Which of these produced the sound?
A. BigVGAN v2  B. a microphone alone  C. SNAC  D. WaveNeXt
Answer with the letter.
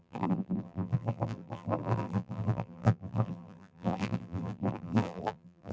A